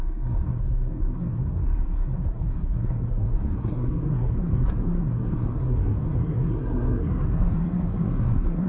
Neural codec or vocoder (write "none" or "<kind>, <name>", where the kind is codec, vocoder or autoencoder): codec, SNAC